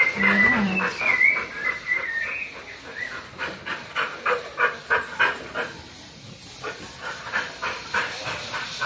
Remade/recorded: recorded